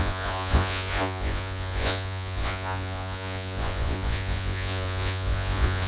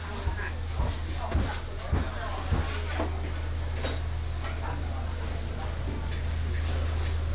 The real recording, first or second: second